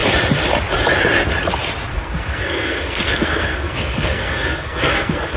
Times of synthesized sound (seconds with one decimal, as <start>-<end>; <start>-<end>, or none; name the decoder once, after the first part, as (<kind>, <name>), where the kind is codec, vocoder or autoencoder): 1.9-5.4 (codec, SNAC)